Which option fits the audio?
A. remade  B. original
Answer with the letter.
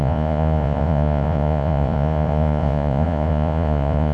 A